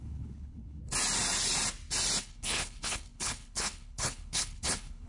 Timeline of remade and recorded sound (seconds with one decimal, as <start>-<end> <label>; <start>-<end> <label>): 0.0-0.8 remade; 0.8-2.2 recorded; 2.2-5.1 remade